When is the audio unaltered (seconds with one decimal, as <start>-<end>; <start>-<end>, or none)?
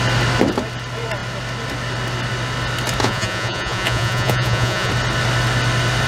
0.0-3.0; 4.9-6.1